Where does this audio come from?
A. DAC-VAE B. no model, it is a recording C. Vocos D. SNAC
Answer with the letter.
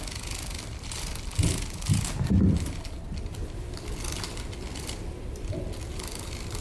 B